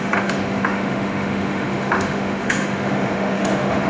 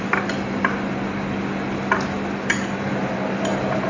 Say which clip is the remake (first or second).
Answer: first